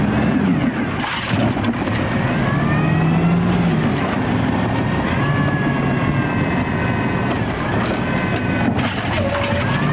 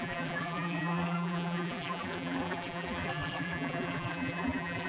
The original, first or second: first